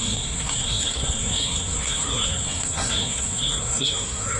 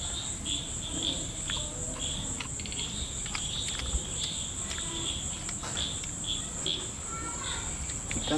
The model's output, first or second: first